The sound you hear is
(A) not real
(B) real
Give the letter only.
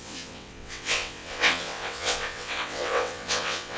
A